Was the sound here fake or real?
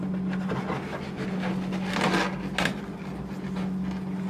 real